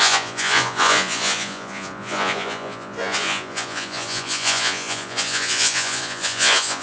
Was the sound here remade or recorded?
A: remade